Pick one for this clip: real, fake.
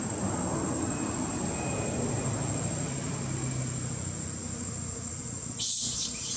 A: real